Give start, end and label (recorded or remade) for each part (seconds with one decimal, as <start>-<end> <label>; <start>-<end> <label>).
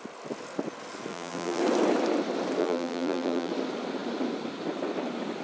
0.0-1.1 recorded; 1.1-1.6 remade; 1.6-2.6 recorded; 2.6-3.5 remade; 3.5-5.4 recorded